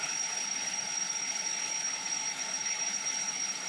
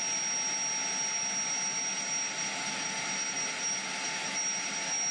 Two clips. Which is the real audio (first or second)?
second